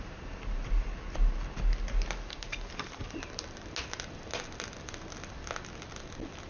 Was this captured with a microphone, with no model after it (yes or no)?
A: yes